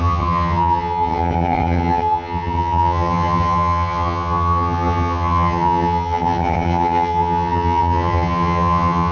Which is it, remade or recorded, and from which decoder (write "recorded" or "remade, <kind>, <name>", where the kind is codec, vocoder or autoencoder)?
remade, vocoder, HiFi-GAN